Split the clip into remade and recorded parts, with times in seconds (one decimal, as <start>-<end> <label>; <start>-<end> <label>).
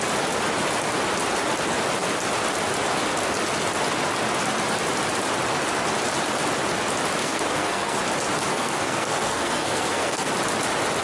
0.0-7.2 recorded; 7.2-8.0 remade; 8.0-8.5 recorded; 8.5-10.3 remade; 10.3-11.0 recorded